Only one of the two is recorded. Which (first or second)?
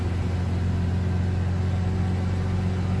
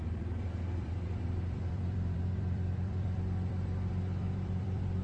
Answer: first